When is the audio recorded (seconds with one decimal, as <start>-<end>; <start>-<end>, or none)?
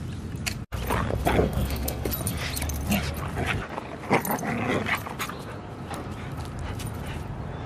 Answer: 0.0-1.4; 2.1-7.7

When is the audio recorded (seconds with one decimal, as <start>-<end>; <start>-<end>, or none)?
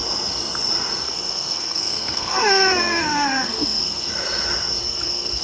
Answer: 0.0-1.0; 4.1-4.8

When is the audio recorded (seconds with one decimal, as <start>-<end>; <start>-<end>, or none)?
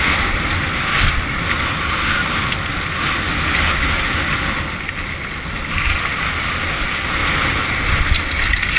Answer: 0.0-8.8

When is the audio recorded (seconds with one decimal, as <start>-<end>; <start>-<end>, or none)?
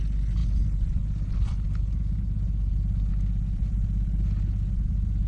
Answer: 0.0-5.3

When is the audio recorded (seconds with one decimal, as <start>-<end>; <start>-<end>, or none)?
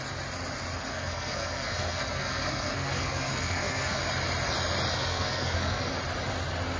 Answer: 0.0-0.9; 4.0-4.9; 5.9-6.8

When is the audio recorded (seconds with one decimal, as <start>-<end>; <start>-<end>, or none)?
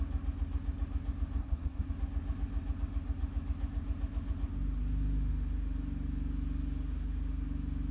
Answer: 0.0-1.4; 1.9-7.9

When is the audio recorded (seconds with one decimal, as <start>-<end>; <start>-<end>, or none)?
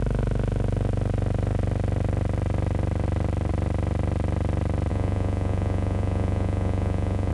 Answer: 0.0-4.9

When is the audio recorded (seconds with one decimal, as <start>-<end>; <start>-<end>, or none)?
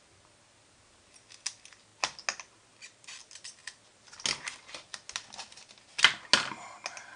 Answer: 0.0-7.2